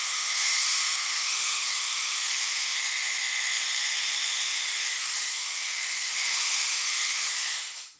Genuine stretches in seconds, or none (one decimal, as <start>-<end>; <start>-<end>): none